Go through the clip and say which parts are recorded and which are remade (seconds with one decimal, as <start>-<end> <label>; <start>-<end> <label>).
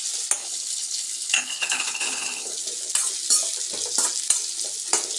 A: 0.0-0.4 recorded; 0.4-2.6 remade; 2.6-5.2 recorded